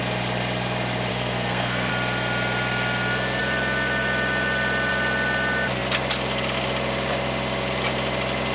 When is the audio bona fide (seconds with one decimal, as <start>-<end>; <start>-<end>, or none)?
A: 0.0-1.1; 1.9-8.5